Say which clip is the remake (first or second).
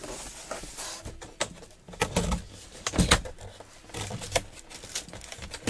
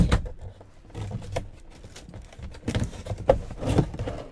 second